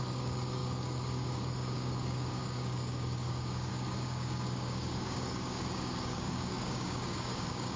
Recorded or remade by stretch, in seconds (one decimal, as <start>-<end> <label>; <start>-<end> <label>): 0.0-7.8 remade